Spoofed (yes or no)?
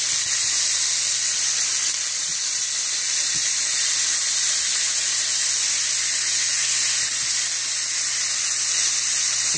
no